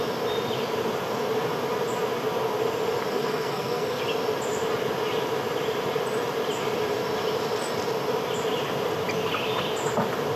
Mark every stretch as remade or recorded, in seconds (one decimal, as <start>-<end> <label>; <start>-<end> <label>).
0.0-3.1 recorded; 3.1-4.0 remade; 4.0-10.4 recorded